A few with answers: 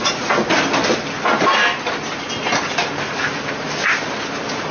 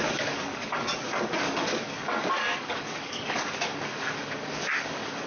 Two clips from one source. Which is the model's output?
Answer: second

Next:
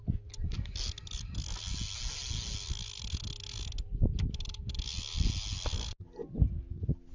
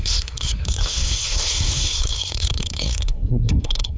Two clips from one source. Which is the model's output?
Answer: second